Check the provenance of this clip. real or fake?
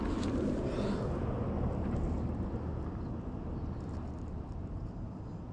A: real